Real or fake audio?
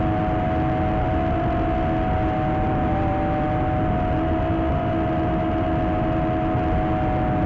real